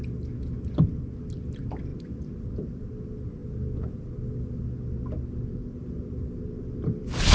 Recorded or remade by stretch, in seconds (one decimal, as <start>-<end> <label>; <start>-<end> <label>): 0.0-7.3 recorded